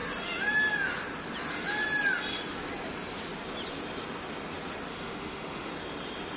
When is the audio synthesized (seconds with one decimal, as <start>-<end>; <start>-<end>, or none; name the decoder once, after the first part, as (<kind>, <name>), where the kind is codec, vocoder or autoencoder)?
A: 4.9-5.7 (autoencoder, DAC-VAE)